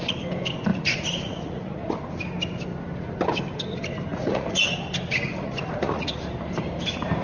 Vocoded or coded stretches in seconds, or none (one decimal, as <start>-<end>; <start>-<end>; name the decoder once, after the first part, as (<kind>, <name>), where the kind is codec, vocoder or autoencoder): 0.7-1.9 (vocoder, Vocos); 4.1-4.6; 5.3-6.2